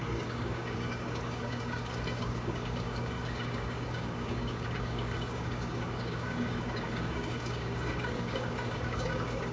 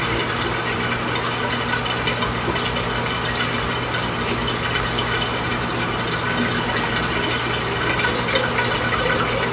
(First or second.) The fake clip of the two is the first